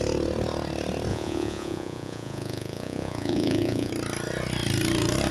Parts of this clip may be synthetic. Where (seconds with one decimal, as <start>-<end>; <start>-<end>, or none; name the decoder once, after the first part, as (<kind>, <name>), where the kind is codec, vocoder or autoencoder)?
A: 1.1-3.9 (vocoder, Vocos)